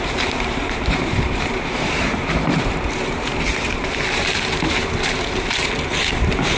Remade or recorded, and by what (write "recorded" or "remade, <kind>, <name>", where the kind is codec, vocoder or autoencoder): remade, vocoder, BigVGAN v2